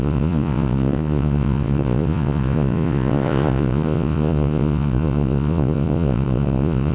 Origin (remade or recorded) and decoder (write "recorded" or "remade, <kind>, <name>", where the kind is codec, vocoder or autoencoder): remade, vocoder, Vocos